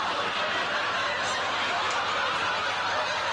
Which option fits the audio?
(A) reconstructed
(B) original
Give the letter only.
B